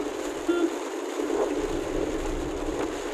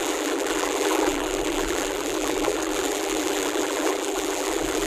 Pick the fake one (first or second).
second